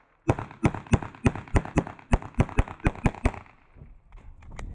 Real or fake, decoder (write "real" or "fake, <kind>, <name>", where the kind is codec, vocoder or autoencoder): real